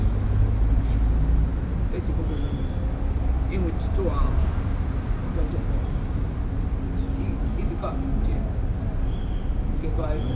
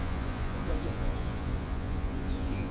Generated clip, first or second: second